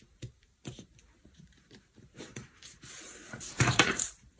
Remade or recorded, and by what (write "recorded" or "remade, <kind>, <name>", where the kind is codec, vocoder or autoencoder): remade, vocoder, BigVGAN v2